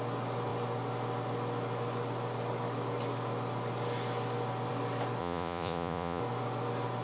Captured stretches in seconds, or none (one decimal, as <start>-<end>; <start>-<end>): 0.0-5.2; 6.2-7.0